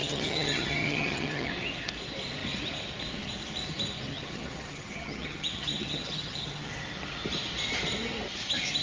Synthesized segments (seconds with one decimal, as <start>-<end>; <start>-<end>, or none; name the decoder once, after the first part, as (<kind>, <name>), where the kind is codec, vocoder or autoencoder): 0.0-1.5 (vocoder, HiFi-GAN); 4.1-6.7